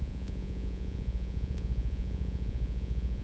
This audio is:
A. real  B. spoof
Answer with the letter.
B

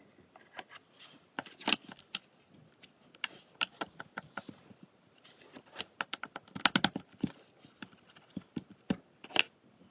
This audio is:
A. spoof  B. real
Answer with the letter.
B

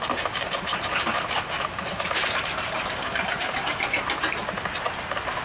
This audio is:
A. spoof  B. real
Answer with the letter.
A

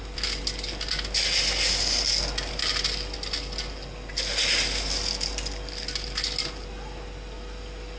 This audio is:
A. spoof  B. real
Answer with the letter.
B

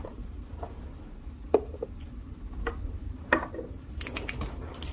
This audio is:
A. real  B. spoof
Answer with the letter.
A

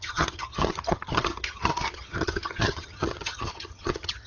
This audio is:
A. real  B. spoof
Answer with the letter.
B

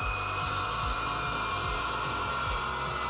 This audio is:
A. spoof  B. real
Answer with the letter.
B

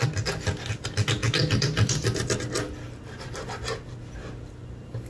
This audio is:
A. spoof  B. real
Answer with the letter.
B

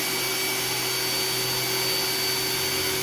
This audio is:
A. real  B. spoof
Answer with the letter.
A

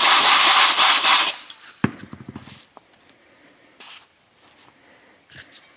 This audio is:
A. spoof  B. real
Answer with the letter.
B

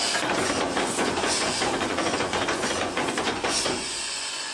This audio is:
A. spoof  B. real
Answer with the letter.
A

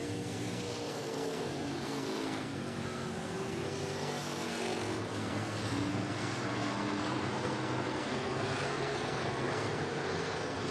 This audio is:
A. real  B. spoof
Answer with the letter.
B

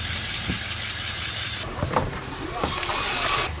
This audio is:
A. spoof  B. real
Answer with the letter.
B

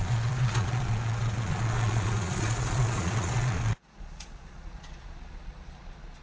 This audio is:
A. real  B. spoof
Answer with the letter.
B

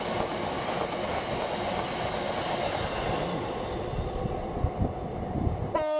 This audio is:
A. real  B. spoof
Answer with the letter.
A